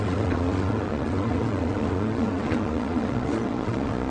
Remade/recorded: remade